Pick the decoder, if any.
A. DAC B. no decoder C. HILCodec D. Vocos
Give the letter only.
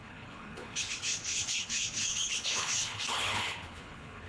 C